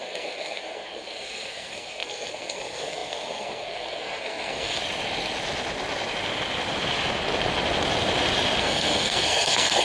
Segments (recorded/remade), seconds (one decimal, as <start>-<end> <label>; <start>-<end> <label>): 0.0-4.8 remade; 4.8-8.6 recorded; 8.6-9.8 remade